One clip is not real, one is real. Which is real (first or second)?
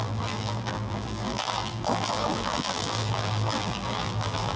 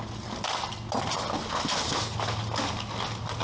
second